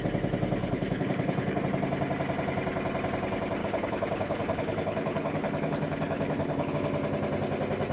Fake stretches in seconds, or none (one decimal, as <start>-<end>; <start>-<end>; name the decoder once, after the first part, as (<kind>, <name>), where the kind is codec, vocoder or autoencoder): 0.6-1.6 (codec, HILCodec); 3.6-6.7